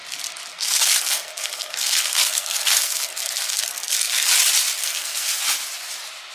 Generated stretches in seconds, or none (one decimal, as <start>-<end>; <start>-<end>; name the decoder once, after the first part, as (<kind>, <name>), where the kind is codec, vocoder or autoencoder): 0.5-4.3 (codec, SNAC); 4.8-5.4